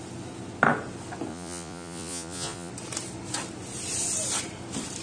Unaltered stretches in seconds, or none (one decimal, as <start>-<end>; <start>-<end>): 0.0-1.3; 2.7-5.0

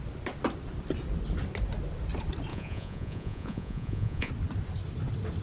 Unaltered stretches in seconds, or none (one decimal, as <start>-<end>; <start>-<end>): 0.0-2.5; 4.3-5.4